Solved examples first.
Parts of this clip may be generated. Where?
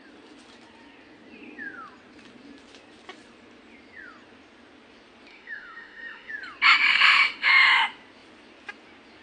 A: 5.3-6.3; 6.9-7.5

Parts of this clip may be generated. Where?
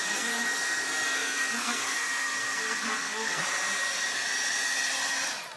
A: 0.0-3.4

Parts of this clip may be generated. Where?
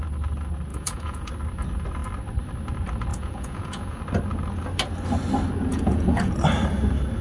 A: 0.7-1.3; 3.1-4.0; 5.7-6.3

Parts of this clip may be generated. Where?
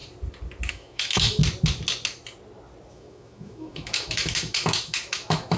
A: 0.7-1.4; 2.9-5.6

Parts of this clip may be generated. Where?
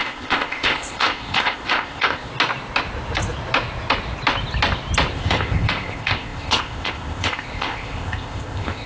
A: 0.0-2.3; 5.1-8.9